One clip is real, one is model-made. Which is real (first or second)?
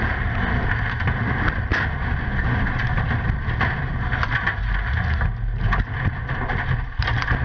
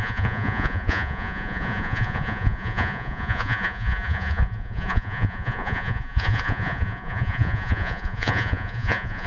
first